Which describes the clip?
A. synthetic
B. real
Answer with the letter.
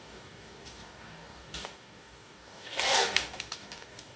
A